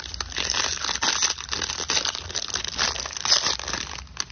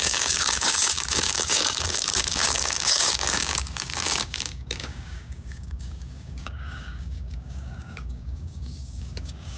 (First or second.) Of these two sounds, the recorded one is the first